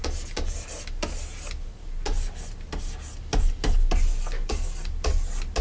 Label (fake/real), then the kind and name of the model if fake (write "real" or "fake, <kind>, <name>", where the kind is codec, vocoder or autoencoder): real